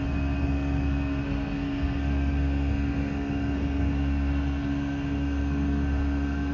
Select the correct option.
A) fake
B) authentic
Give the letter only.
A